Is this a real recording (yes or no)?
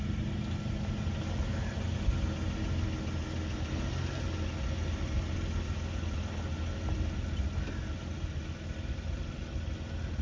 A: yes